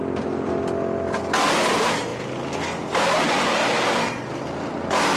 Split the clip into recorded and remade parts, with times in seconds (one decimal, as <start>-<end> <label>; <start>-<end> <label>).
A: 0.0-5.2 recorded